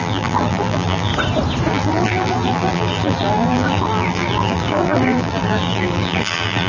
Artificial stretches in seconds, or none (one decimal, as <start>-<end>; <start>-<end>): 0.0-1.1; 1.7-6.7